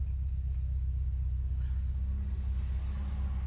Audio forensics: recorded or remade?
recorded